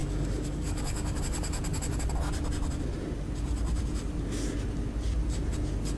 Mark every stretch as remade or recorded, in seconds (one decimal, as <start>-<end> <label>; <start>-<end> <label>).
0.0-1.2 remade; 1.2-6.0 recorded